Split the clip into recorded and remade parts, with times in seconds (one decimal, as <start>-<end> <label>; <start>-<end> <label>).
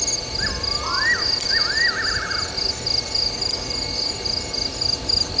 0.0-5.4 recorded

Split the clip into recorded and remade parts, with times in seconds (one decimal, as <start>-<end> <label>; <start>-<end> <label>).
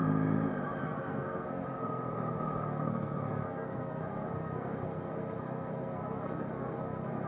0.0-0.8 recorded; 0.8-7.3 remade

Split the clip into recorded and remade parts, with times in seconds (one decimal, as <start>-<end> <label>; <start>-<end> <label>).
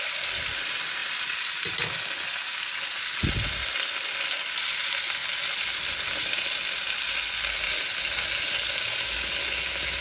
0.0-10.0 recorded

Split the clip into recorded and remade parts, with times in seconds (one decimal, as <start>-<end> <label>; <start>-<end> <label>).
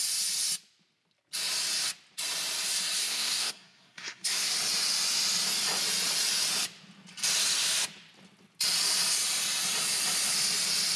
0.0-3.0 recorded; 3.0-4.5 remade; 4.5-11.0 recorded